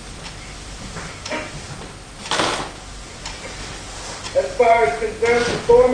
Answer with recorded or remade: recorded